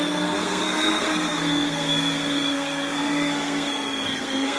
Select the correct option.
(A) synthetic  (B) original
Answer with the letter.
A